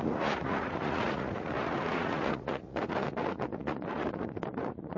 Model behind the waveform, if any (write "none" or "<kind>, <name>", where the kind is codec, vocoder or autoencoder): vocoder, Vocos